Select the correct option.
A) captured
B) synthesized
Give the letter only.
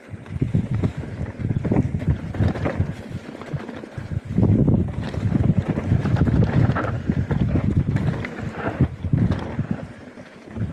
B